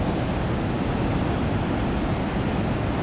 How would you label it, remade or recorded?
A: recorded